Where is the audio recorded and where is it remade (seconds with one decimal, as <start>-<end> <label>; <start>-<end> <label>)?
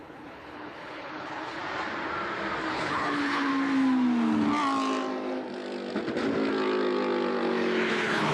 0.0-1.6 remade; 1.6-2.7 recorded; 2.7-3.5 remade; 3.5-7.9 recorded; 7.9-8.3 remade